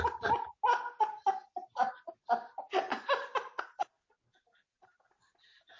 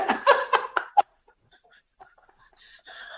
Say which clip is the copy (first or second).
second